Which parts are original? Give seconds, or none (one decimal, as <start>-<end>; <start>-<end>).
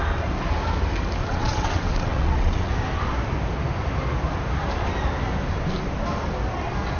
0.0-1.2; 2.7-7.0